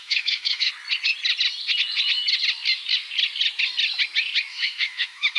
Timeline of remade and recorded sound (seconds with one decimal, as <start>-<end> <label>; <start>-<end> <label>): 0.0-0.7 remade; 0.7-4.5 recorded; 4.5-5.4 remade